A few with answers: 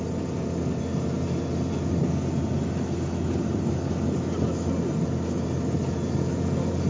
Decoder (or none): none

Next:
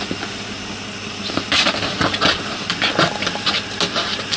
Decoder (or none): none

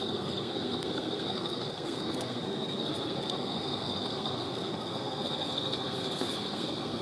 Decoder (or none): codec, SNAC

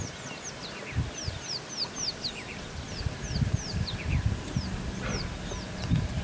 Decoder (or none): none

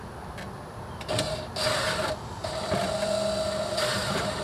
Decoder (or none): none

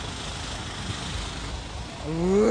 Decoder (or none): none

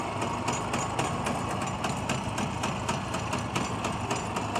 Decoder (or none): none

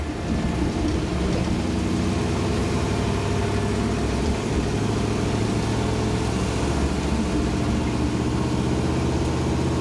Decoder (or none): none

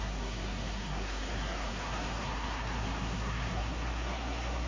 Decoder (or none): codec, SNAC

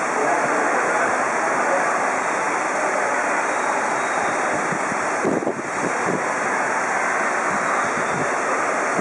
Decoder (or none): none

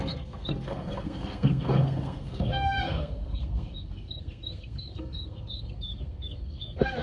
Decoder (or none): codec, SNAC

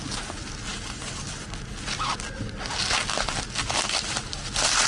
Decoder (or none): none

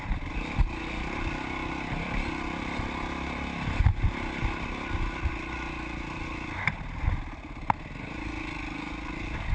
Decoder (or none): none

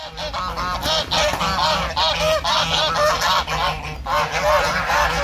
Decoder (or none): none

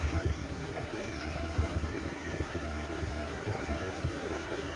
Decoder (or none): codec, SNAC